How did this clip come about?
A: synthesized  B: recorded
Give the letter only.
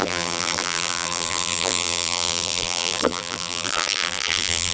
A